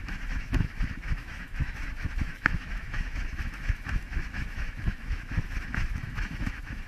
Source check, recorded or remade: remade